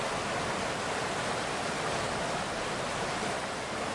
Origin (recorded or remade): recorded